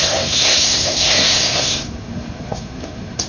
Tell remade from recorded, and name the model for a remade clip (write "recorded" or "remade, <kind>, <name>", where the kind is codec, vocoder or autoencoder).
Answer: remade, codec, SNAC